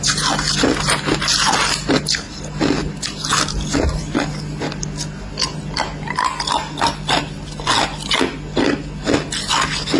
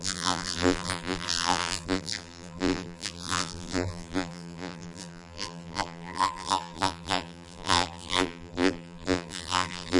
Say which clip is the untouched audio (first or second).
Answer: first